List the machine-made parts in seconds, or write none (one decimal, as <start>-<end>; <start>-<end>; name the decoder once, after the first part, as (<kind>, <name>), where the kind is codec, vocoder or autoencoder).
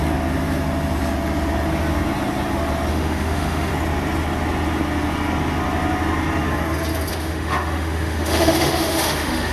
2.9-3.7 (autoencoder, DAC-VAE); 7.1-9.5